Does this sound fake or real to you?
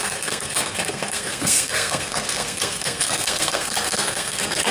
fake